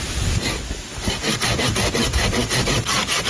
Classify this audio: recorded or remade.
recorded